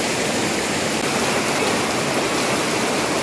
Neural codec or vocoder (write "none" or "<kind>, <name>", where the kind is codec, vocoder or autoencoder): none